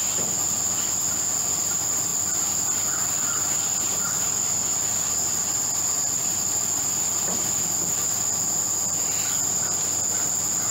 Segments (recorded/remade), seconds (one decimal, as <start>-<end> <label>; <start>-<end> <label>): 0.0-10.7 recorded